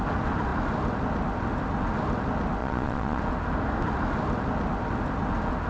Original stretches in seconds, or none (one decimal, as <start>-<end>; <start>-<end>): 0.0-2.6; 3.2-5.7

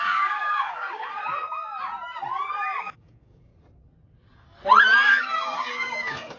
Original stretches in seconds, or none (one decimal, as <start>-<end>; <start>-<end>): 1.2-2.8; 3.5-5.2

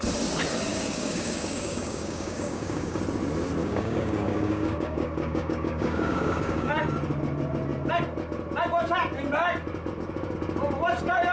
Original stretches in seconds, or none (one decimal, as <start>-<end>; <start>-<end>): 0.0-0.7; 3.0-3.6; 6.7-11.3

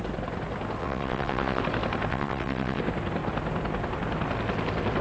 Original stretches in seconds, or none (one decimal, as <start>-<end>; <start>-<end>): 0.0-0.8; 1.6-2.1; 2.8-5.0

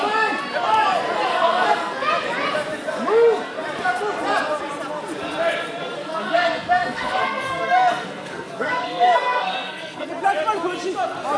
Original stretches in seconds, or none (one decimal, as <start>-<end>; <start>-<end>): 0.0-1.3; 2.1-6.0; 10.1-11.4

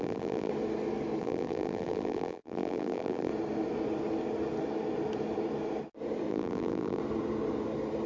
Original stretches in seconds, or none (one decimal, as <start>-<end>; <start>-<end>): 0.5-1.2; 3.3-6.3; 7.0-8.1

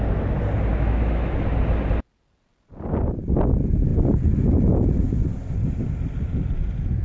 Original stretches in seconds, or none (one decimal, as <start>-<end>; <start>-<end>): 0.0-0.7; 1.3-7.0